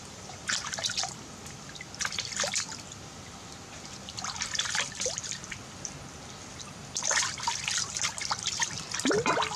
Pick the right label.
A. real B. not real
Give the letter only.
A